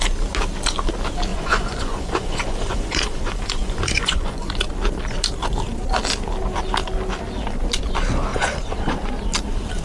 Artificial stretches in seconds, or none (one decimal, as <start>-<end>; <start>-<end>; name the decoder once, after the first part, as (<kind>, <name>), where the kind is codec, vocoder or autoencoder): 1.3-4.5 (vocoder, Vocos); 8.3-9.1